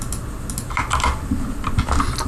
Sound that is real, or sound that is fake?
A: real